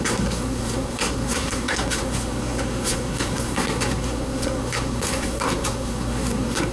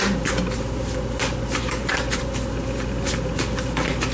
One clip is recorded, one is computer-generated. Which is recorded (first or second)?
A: second